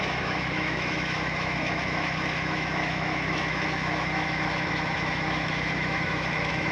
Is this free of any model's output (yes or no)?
no